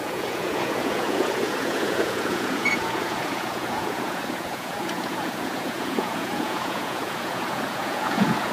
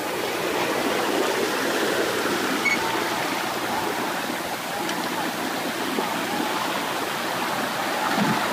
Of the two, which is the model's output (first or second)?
first